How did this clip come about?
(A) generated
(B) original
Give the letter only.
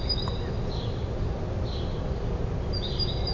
B